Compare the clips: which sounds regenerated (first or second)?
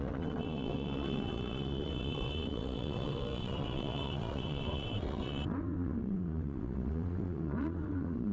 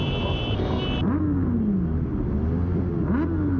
first